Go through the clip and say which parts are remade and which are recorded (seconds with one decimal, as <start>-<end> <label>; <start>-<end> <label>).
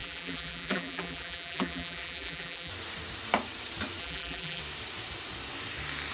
0.0-2.7 remade; 2.7-4.0 recorded; 4.0-4.6 remade; 4.6-6.1 recorded